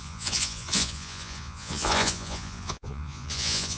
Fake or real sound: fake